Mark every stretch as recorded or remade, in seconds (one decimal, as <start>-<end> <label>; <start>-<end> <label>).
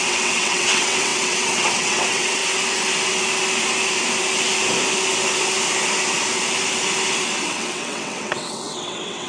0.0-2.4 remade; 2.4-7.4 recorded; 7.4-9.3 remade